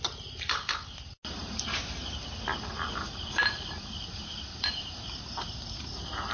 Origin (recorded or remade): recorded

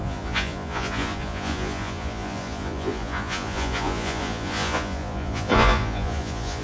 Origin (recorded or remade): remade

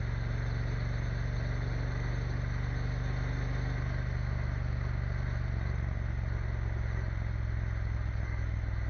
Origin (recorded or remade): recorded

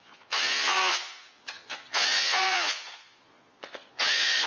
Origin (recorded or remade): remade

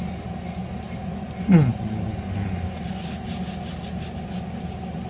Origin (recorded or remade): recorded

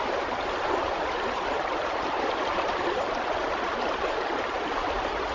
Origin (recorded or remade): recorded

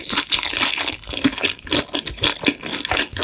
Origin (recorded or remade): recorded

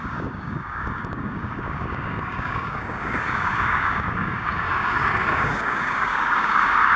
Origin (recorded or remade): remade